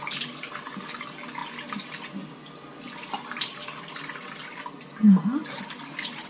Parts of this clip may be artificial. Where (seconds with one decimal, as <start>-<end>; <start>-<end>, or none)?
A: none